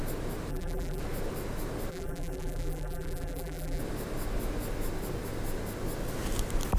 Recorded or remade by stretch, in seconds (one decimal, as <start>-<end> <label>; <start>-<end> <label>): 0.0-0.5 recorded; 0.5-1.0 remade; 1.0-1.9 recorded; 1.9-3.8 remade; 3.8-6.8 recorded